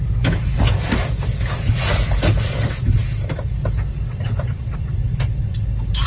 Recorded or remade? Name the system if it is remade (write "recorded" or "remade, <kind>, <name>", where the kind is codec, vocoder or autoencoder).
recorded